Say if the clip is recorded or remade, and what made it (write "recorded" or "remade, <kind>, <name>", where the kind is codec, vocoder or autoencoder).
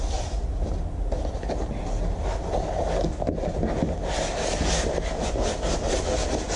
recorded